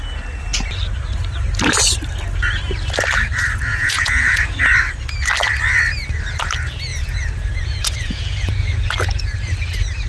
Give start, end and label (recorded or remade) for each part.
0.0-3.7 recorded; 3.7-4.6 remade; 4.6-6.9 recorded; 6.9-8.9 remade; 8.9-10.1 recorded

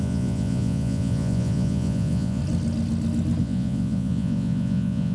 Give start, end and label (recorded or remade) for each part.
0.0-2.4 remade; 2.4-3.4 recorded; 3.4-5.1 remade

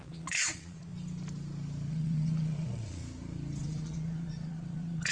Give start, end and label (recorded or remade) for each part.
0.0-0.9 remade; 0.9-1.9 recorded; 1.9-3.0 remade; 3.0-3.6 recorded; 3.6-5.1 remade

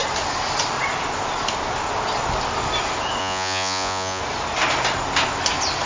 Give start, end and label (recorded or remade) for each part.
0.0-3.2 recorded; 3.2-4.2 remade; 4.2-5.9 recorded

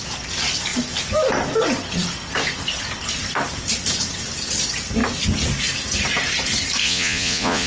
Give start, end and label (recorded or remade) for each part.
0.0-6.8 recorded; 6.8-7.7 remade

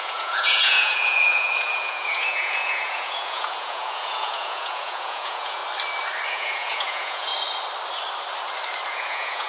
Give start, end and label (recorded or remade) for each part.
0.0-5.6 remade; 5.6-6.3 recorded; 6.3-7.3 remade; 7.3-8.9 recorded; 8.9-9.5 remade

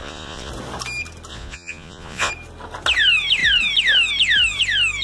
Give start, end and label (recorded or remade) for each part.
0.0-0.5 remade; 0.5-1.3 recorded; 1.3-2.3 remade; 2.3-5.0 recorded

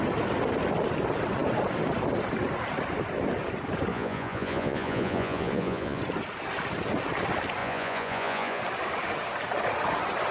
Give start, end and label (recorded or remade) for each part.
0.0-3.9 recorded; 3.9-6.0 remade; 6.0-7.6 recorded; 7.6-8.6 remade; 8.6-10.3 recorded